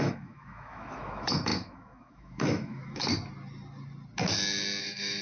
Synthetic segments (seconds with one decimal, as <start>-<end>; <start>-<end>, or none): 0.0-3.0; 4.8-5.2